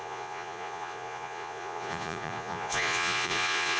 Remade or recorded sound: remade